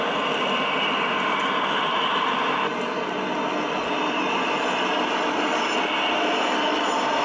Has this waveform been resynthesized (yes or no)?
no